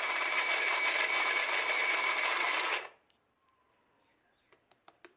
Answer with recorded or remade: remade